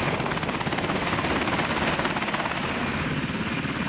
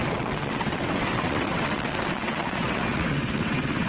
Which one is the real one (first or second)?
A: first